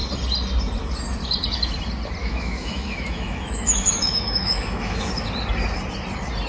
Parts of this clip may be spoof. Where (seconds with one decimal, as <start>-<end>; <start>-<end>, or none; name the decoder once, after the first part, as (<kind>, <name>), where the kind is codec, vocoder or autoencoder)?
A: 2.2-5.1 (autoencoder, DAC-VAE)